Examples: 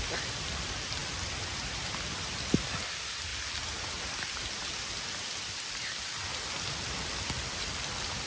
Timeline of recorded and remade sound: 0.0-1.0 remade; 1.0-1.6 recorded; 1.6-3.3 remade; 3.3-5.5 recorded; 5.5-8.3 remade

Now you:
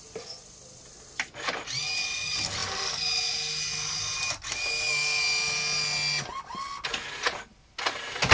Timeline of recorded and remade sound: 0.0-8.3 recorded

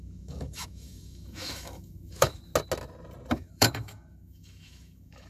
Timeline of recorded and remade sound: 0.0-2.5 remade; 2.5-3.3 recorded; 3.3-5.3 remade

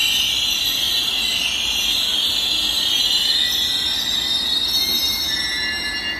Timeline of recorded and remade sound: 0.0-6.2 recorded

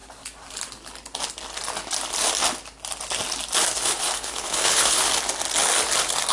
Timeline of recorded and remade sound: 0.0-3.8 recorded; 3.8-5.1 remade; 5.1-6.3 recorded

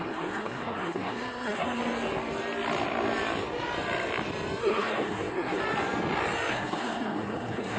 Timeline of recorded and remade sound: 0.0-1.8 remade; 1.8-4.6 recorded; 4.6-5.6 remade; 5.6-6.5 recorded; 6.5-7.8 remade